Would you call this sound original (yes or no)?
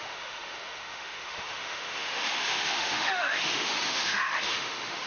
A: no